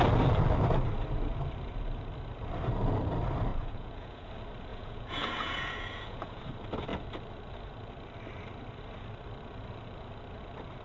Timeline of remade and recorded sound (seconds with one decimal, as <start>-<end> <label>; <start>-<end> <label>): 0.0-3.5 recorded; 3.5-4.3 remade; 4.3-4.7 recorded; 4.7-6.4 remade; 6.4-10.8 recorded